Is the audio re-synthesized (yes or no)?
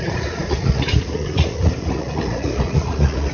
yes